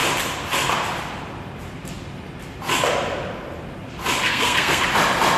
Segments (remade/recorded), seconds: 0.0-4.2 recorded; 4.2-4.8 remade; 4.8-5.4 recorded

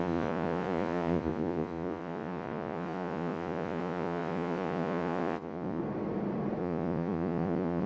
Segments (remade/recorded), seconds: 0.0-5.8 remade; 5.8-6.6 recorded; 6.6-7.9 remade

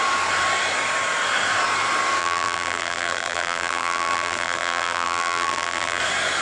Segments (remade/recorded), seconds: 0.0-2.2 recorded; 2.2-6.0 remade; 6.0-6.4 recorded

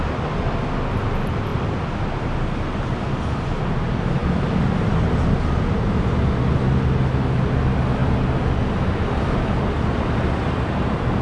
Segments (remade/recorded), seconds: 0.0-11.2 recorded

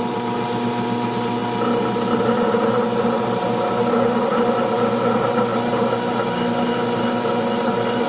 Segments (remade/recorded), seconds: 0.0-8.1 recorded

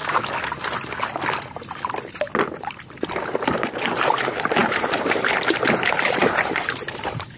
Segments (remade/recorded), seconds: 0.0-3.2 recorded; 3.2-7.4 remade

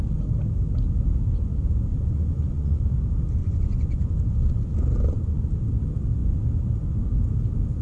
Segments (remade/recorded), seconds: 0.0-1.9 recorded; 1.9-2.8 remade; 2.8-3.4 recorded; 3.4-4.1 remade; 4.1-7.8 recorded

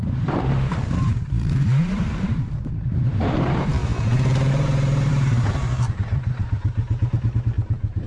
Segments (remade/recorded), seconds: 0.0-3.8 remade; 3.8-4.5 recorded; 4.5-8.1 remade